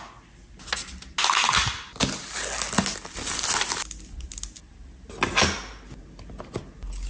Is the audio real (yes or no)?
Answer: yes